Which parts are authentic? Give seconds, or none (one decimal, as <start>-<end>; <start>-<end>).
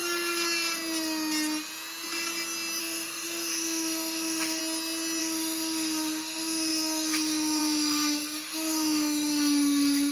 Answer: 0.0-2.8; 4.6-5.2